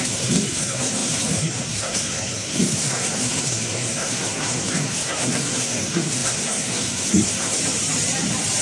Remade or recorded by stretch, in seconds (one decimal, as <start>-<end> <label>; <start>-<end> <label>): 0.0-7.6 remade; 7.6-8.6 recorded